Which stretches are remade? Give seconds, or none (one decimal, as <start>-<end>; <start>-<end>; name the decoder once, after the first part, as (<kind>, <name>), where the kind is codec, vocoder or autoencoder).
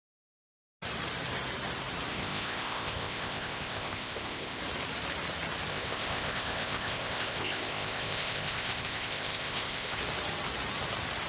2.1-4.6 (codec, ZipCodec); 5.7-10.0